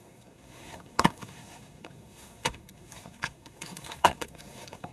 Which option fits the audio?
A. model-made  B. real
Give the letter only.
A